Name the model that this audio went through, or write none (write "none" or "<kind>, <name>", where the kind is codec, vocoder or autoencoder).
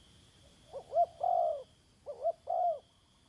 none